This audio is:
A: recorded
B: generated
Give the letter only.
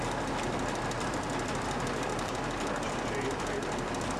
B